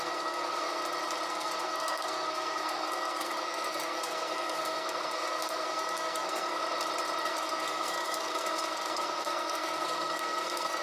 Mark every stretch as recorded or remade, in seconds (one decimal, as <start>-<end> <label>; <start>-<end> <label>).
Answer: 0.0-0.8 remade; 0.8-1.3 recorded; 1.3-6.6 remade; 6.6-7.2 recorded; 7.2-10.8 remade